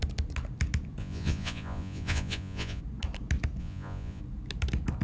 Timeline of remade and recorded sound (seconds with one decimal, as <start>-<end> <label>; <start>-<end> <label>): 0.0-1.0 recorded; 1.0-2.8 remade; 2.8-3.6 recorded; 3.6-4.2 remade; 4.2-5.0 recorded